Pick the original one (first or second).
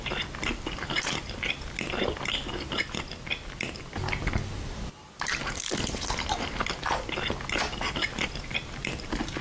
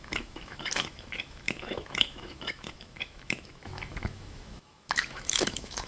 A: first